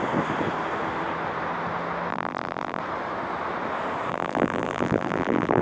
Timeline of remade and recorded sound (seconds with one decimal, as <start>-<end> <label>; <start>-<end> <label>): 0.0-2.1 recorded; 2.1-2.8 remade; 2.8-4.1 recorded; 4.1-5.6 remade